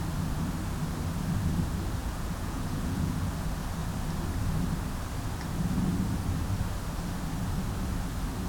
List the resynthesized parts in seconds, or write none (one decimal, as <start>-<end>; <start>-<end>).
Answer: 2.0-3.3